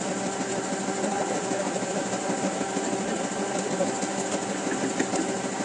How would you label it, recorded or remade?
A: recorded